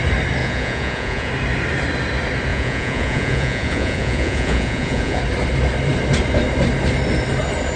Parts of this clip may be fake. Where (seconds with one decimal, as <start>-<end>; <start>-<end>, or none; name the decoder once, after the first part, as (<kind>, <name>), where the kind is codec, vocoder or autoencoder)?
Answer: 0.4-1.3 (vocoder, Vocos); 2.5-5.2